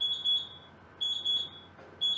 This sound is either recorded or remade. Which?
recorded